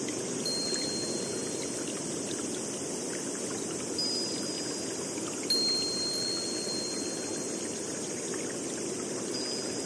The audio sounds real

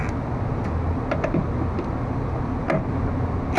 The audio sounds real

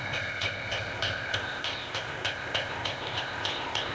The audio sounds fake